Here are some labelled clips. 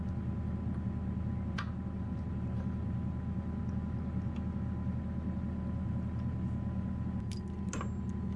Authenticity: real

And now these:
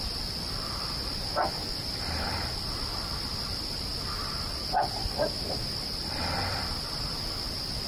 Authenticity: real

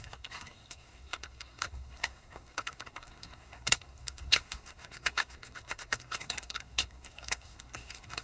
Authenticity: fake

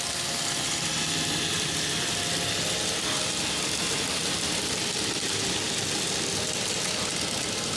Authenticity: real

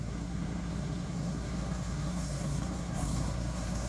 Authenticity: fake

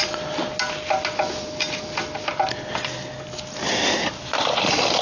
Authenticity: real